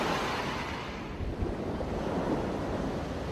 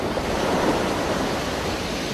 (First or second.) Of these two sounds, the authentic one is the first